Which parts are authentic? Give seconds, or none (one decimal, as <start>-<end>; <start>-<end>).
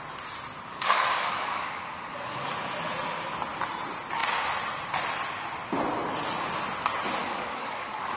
0.0-0.7; 2.5-7.2